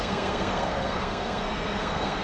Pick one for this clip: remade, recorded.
remade